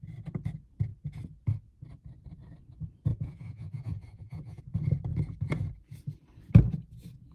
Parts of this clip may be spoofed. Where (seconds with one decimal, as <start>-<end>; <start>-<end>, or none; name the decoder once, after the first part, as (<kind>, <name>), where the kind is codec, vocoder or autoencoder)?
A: 3.1-4.6 (vocoder, Vocos)